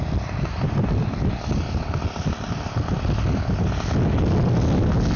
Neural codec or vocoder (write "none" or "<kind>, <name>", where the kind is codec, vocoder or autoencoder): none